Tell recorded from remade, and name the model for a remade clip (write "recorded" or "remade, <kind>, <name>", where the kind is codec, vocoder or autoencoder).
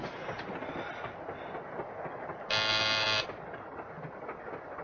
recorded